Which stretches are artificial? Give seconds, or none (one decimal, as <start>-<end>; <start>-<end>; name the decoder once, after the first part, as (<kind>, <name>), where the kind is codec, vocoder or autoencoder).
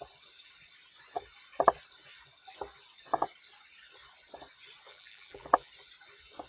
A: 4.9-5.7 (vocoder, BigVGAN v2)